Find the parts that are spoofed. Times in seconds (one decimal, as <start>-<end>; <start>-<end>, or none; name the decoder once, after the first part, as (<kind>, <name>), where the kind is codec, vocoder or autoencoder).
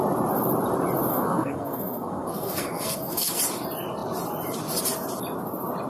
1.1-3.4 (codec, SNAC)